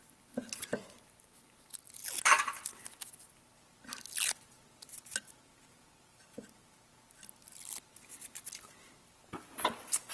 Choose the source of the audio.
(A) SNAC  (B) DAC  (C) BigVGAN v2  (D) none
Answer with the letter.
D